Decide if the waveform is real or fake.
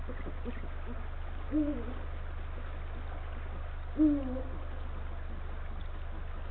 real